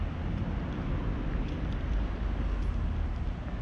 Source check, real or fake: real